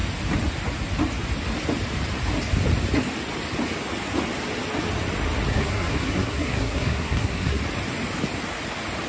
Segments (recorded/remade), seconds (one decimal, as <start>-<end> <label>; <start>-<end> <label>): 0.0-5.5 recorded; 5.5-7.6 remade; 7.6-9.1 recorded